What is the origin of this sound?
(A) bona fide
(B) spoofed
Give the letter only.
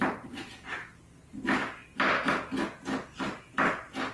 A